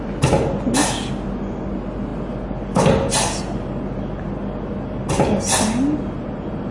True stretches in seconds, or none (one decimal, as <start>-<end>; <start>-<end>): 0.0-6.7